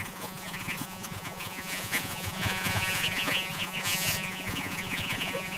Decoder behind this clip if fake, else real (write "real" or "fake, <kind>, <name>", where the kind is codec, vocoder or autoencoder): fake, vocoder, Vocos